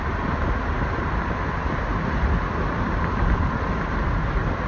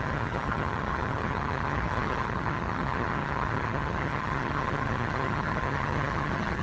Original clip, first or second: first